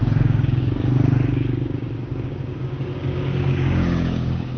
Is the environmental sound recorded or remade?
remade